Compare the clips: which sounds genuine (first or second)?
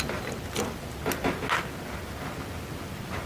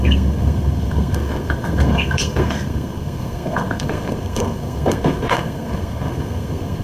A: first